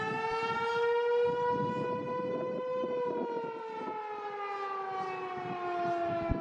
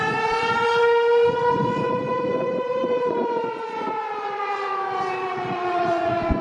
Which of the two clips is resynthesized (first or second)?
second